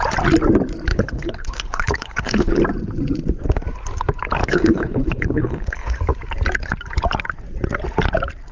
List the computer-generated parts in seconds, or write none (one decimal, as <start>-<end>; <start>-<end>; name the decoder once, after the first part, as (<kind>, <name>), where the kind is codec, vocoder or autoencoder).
0.9-2.6 (codec, HILCodec); 4.4-6.0